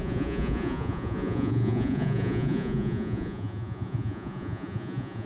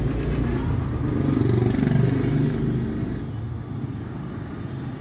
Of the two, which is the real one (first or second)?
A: second